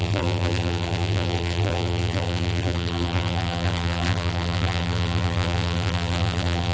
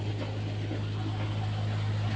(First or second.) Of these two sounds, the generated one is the first